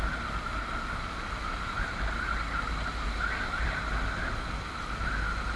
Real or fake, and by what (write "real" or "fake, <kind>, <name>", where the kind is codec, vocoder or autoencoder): real